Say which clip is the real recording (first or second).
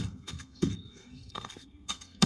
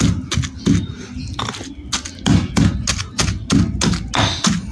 second